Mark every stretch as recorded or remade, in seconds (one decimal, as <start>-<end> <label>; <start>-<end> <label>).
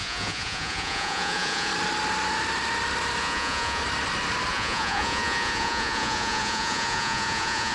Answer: 0.0-1.7 remade; 1.7-3.2 recorded; 3.2-3.8 remade; 3.8-4.5 recorded; 4.5-7.7 remade